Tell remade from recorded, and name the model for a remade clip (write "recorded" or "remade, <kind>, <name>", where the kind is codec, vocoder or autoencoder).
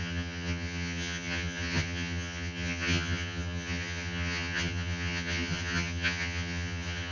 remade, vocoder, HiFi-GAN